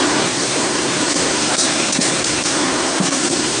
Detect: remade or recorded remade